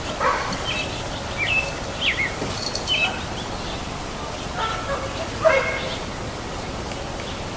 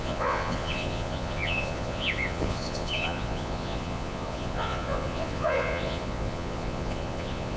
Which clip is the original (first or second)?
first